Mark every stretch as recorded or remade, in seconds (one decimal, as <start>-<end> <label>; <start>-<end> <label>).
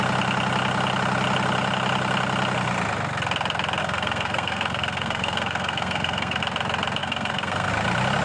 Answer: 0.0-3.8 recorded; 3.8-6.4 remade; 6.4-7.0 recorded; 7.0-7.7 remade; 7.7-8.2 recorded